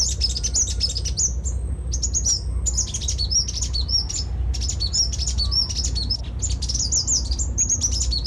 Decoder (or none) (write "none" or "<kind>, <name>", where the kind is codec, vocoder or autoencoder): none